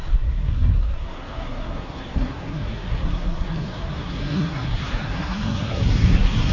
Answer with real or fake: fake